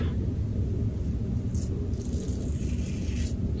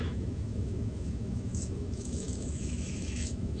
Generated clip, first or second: second